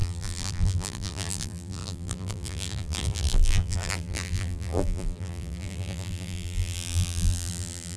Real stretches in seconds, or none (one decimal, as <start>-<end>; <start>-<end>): none